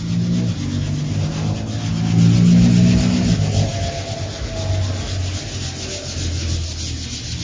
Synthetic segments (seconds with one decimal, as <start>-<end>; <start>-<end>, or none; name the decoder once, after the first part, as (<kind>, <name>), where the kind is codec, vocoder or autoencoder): none